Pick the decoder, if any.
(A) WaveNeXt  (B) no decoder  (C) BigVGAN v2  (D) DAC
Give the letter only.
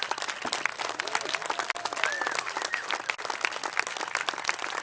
B